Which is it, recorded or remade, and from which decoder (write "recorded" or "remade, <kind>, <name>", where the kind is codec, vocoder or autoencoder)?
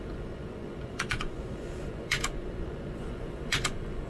remade, vocoder, Vocos